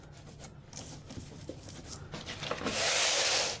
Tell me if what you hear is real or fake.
real